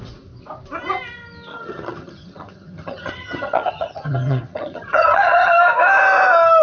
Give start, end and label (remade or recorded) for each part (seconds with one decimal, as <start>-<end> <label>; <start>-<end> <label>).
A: 0.0-1.5 recorded; 1.5-5.5 remade; 5.5-6.6 recorded